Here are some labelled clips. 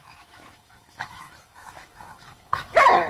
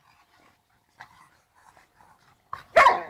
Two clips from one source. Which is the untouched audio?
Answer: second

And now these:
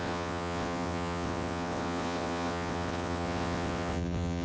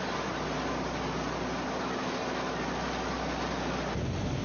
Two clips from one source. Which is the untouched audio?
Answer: second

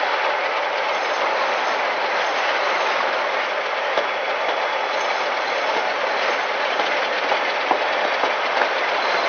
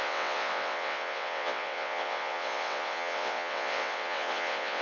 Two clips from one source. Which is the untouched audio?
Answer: first